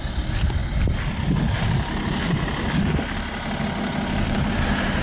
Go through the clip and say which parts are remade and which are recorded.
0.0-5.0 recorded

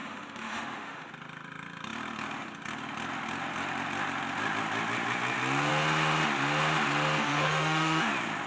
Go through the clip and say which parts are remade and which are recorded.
0.0-1.1 remade; 1.1-7.2 recorded; 7.2-8.1 remade; 8.1-8.5 recorded

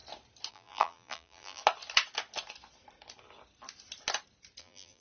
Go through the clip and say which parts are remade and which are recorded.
0.0-0.5 recorded; 0.5-1.6 remade; 1.6-4.6 recorded; 4.6-5.0 remade

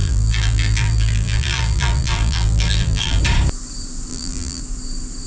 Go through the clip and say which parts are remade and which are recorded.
0.0-3.2 remade; 3.2-4.1 recorded; 4.1-4.6 remade; 4.6-5.3 recorded

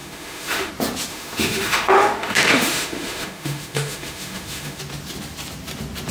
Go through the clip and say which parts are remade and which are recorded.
0.0-0.7 remade; 0.7-1.1 recorded; 1.1-4.8 remade; 4.8-6.1 recorded